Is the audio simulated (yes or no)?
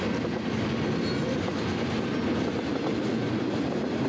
no